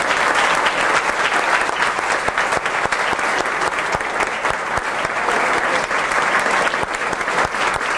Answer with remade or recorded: recorded